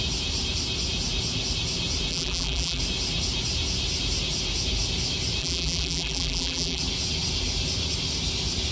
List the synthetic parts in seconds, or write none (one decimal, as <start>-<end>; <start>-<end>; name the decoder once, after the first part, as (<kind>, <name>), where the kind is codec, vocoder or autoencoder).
2.1-2.8 (vocoder, BigVGAN v2); 5.4-6.8